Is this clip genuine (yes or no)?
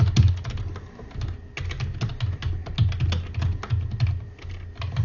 yes